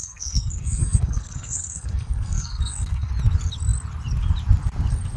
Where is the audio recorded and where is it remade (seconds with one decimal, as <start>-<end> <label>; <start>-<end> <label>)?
0.0-3.1 remade; 3.1-5.2 recorded

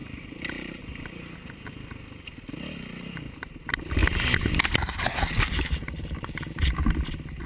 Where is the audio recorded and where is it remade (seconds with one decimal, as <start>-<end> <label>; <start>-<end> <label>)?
0.0-0.8 remade; 0.8-4.0 recorded; 4.0-6.5 remade; 6.5-7.5 recorded